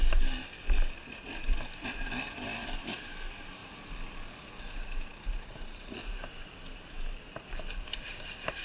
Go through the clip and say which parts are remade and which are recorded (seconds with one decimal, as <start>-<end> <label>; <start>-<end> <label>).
0.0-0.4 remade; 0.4-2.3 recorded; 2.3-3.6 remade; 3.6-4.6 recorded; 4.6-8.6 remade